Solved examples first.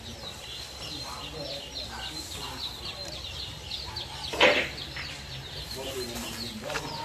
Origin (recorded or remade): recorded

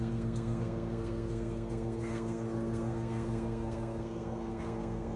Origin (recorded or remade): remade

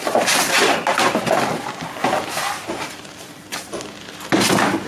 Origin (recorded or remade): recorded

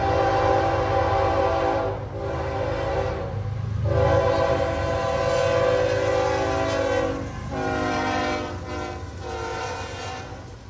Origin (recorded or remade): recorded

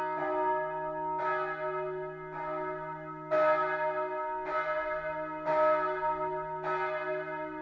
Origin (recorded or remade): recorded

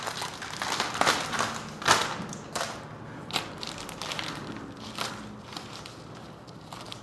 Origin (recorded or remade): recorded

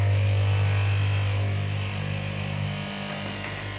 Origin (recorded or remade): recorded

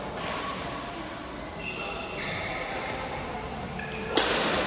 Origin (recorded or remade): recorded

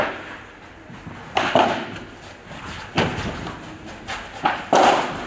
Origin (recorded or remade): recorded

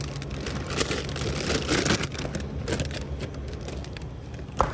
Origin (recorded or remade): recorded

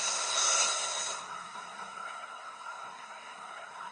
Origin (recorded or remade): remade